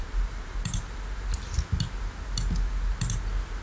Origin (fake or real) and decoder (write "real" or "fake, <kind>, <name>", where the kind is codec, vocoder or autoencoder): real